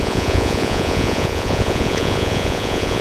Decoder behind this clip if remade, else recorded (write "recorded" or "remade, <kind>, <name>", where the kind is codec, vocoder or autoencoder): remade, vocoder, Vocos